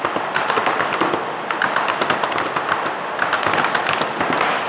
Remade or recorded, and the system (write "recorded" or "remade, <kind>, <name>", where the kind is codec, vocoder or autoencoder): recorded